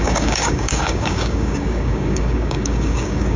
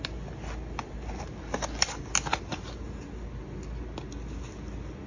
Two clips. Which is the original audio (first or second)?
second